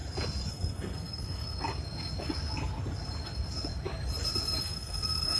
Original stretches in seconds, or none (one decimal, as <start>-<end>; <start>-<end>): 0.0-0.5; 1.4-4.6